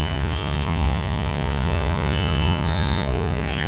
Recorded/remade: remade